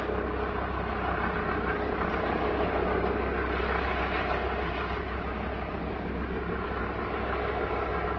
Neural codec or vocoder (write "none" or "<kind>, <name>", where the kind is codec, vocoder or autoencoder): none